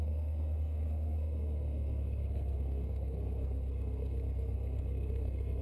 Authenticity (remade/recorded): remade